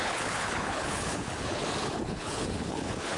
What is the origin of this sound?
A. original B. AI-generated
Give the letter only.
B